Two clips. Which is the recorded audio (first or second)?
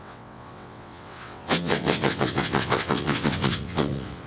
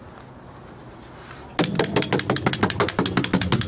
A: second